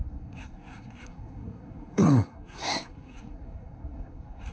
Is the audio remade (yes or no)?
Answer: yes